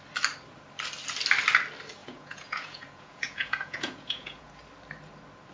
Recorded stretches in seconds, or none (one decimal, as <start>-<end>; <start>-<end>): 0.0-2.0; 4.5-5.5